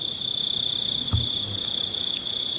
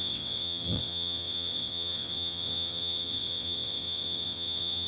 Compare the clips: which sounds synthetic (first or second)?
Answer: second